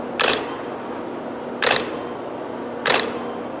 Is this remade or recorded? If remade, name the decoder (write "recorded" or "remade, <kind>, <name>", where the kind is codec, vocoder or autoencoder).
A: recorded